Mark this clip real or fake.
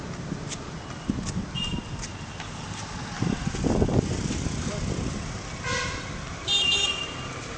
real